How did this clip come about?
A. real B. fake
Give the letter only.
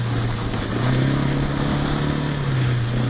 A